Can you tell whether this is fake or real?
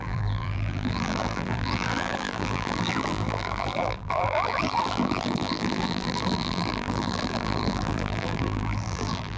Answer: fake